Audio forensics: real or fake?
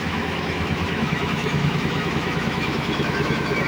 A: fake